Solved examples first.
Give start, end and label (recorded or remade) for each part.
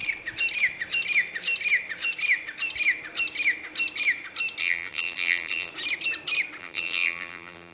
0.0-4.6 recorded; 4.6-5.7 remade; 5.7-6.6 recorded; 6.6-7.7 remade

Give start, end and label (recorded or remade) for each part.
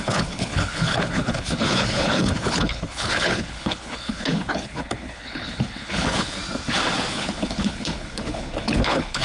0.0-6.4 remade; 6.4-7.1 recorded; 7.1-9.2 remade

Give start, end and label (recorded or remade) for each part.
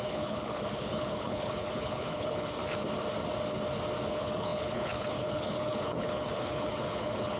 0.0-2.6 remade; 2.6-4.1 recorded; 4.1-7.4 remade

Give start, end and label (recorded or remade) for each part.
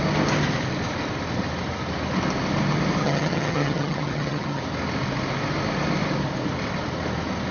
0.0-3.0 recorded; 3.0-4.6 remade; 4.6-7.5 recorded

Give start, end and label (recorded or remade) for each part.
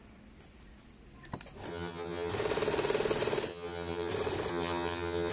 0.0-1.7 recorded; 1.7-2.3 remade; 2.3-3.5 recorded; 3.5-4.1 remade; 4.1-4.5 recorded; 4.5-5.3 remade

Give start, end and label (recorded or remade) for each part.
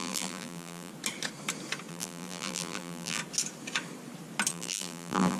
0.0-0.9 remade; 0.9-1.9 recorded; 1.9-3.2 remade; 3.2-4.5 recorded; 4.5-5.4 remade